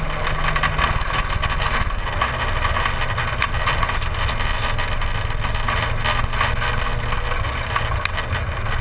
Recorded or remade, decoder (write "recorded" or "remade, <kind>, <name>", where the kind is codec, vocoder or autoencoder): recorded